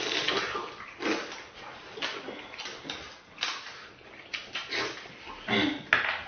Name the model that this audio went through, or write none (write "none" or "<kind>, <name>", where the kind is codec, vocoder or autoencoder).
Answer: none